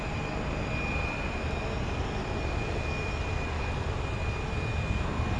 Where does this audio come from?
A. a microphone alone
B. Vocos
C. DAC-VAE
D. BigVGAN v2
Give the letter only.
A